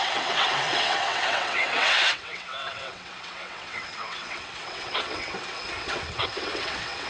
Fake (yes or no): yes